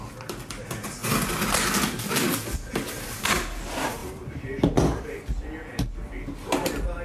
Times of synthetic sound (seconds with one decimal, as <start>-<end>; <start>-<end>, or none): 4.0-4.6